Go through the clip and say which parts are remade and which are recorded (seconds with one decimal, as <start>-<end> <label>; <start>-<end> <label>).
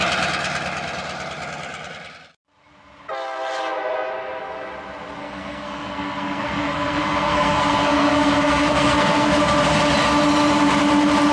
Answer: 0.0-5.2 recorded; 5.2-9.3 remade; 9.3-11.3 recorded